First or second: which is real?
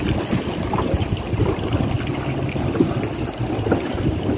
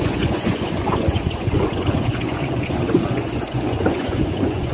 first